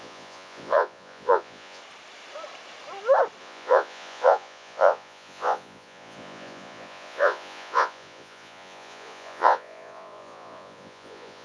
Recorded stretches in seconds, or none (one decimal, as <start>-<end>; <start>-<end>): 1.8-3.4